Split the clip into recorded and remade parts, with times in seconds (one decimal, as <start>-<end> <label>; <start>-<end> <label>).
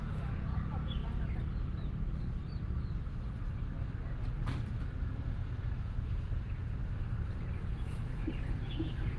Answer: 0.0-1.0 remade; 1.0-5.0 recorded; 5.0-6.8 remade; 6.8-7.6 recorded; 7.6-8.2 remade; 8.2-8.7 recorded; 8.7-9.2 remade